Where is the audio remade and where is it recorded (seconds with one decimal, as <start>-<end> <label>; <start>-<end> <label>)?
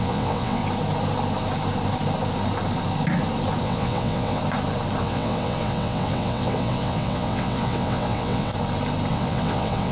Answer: 0.0-0.6 remade; 0.6-3.6 recorded; 3.6-4.4 remade; 4.4-5.0 recorded; 5.0-8.5 remade; 8.5-9.1 recorded; 9.1-9.9 remade